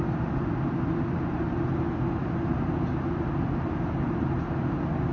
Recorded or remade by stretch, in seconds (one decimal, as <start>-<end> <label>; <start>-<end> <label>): 0.0-5.1 recorded